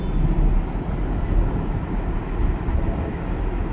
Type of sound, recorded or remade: recorded